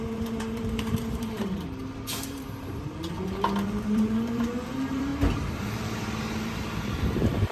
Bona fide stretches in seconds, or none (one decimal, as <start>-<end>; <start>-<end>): 1.8-2.3; 5.1-5.6